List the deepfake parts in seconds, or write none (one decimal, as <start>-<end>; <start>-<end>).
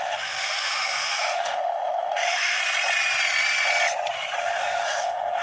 0.0-2.6; 4.4-5.4